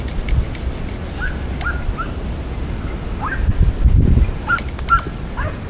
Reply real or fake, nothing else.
real